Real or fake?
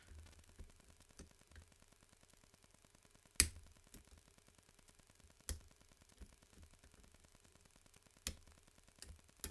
real